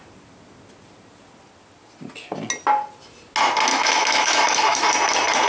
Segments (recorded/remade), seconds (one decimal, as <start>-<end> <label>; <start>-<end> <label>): 0.0-3.7 recorded; 3.7-4.9 remade; 4.9-5.5 recorded